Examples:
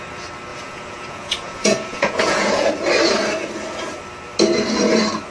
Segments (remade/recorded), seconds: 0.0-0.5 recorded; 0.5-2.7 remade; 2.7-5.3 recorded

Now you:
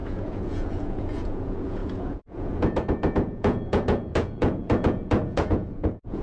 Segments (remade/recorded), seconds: 0.0-6.2 remade

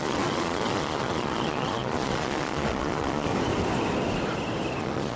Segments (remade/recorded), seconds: 0.0-3.3 remade; 3.3-4.8 recorded; 4.8-5.2 remade

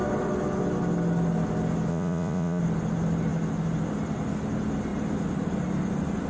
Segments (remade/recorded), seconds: 0.0-1.9 recorded; 1.9-2.6 remade; 2.6-6.3 recorded

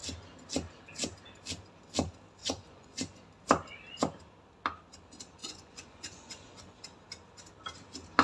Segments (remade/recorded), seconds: 0.0-2.4 recorded; 2.4-3.2 remade; 3.2-5.4 recorded; 5.4-6.8 remade; 6.8-8.2 recorded

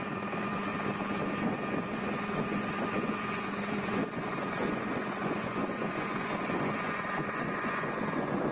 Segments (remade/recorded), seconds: 0.0-0.7 remade; 0.7-1.3 recorded; 1.3-8.5 remade

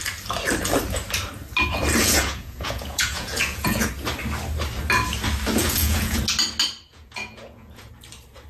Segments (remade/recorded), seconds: 0.0-2.0 recorded; 2.0-3.9 remade; 3.9-5.6 recorded; 5.6-6.2 remade; 6.2-6.9 recorded; 6.9-7.9 remade; 7.9-8.5 recorded

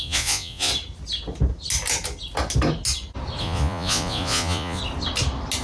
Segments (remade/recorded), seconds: 0.0-0.7 remade; 0.7-3.4 recorded; 3.4-4.8 remade; 4.8-5.6 recorded